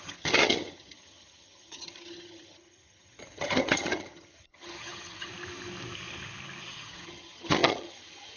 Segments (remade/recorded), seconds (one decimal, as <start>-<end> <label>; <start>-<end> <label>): 0.0-5.3 remade; 5.3-6.7 recorded; 6.7-8.4 remade